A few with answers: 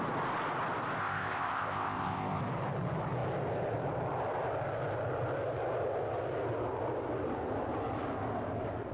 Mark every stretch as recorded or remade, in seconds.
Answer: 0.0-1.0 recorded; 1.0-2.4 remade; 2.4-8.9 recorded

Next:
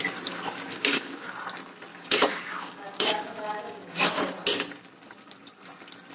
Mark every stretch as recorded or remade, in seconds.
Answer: 0.0-0.7 recorded; 0.7-1.3 remade; 1.3-1.9 recorded; 1.9-4.3 remade; 4.3-6.1 recorded

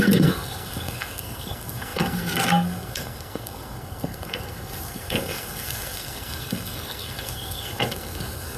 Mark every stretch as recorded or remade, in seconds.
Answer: 0.0-8.6 remade